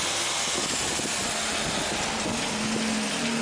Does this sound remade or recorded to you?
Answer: recorded